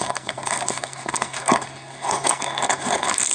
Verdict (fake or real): fake